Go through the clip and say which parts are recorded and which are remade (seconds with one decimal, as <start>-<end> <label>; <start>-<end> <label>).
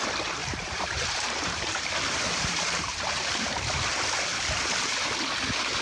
0.0-0.4 recorded; 0.4-3.0 remade; 3.0-4.3 recorded; 4.3-4.9 remade; 4.9-5.8 recorded